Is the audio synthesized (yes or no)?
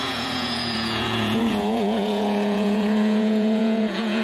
yes